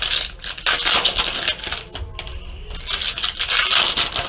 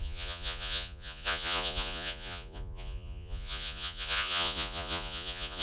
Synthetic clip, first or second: second